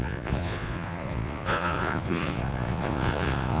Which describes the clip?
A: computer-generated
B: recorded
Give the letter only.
A